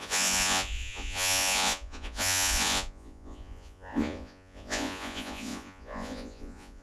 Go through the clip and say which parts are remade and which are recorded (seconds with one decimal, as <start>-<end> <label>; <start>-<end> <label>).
0.0-6.8 remade